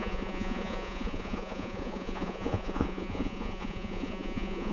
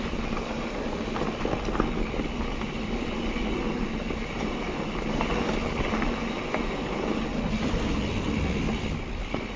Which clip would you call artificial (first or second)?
first